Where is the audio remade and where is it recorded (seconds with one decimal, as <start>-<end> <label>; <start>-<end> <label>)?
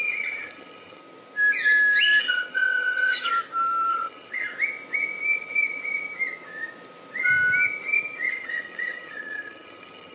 0.0-1.0 remade; 1.0-2.2 recorded; 2.2-3.3 remade; 3.3-3.9 recorded; 3.9-4.5 remade; 4.5-8.3 recorded; 8.3-10.1 remade